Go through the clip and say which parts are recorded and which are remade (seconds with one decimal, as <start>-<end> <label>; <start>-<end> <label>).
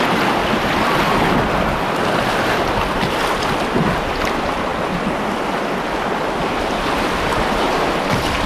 0.0-8.5 recorded